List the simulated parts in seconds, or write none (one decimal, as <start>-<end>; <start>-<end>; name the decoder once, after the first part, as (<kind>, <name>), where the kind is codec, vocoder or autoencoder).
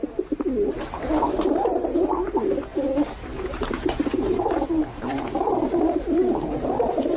0.0-7.2 (vocoder, BigVGAN v2)